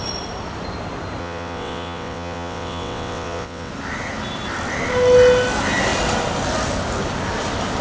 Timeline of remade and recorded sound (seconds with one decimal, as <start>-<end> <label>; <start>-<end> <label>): 0.0-1.2 recorded; 1.2-3.7 remade; 3.7-7.8 recorded